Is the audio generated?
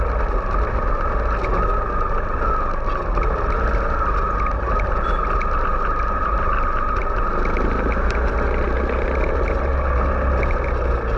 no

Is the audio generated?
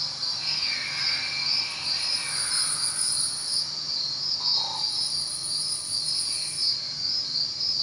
no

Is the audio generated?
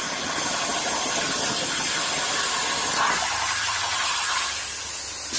no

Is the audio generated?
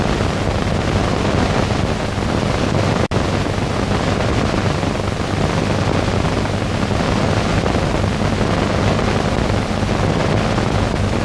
no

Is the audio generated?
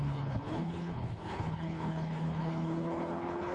yes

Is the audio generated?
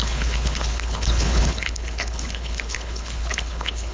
yes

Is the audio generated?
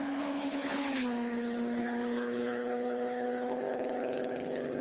yes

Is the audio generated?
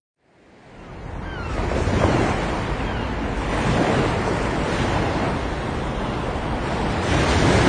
no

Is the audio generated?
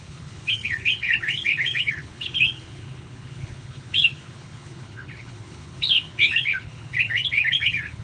yes